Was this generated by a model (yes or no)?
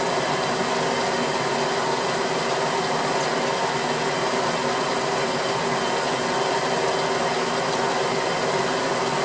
no